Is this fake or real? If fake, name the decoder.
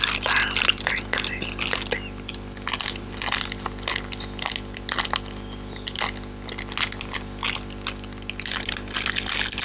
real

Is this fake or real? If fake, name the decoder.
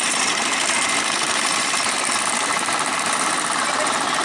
real